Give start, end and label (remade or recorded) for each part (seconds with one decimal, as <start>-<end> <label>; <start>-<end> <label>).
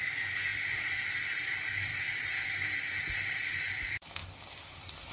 0.0-5.1 recorded